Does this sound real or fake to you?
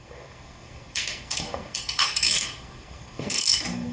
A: fake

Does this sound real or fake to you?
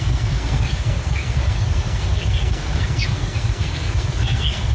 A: fake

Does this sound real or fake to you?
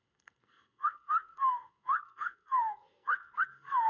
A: fake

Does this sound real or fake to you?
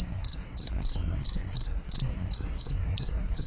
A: fake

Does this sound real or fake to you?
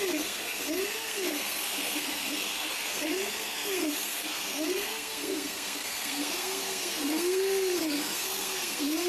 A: fake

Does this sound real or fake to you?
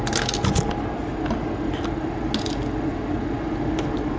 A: real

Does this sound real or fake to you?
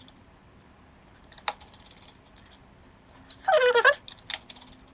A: real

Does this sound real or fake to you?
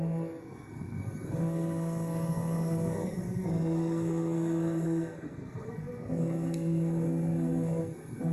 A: fake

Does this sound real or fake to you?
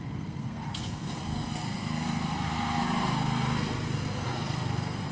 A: fake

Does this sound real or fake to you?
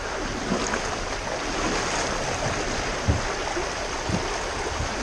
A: real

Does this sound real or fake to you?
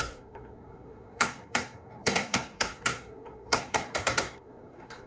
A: fake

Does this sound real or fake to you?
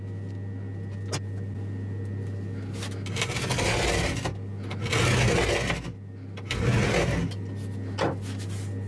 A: real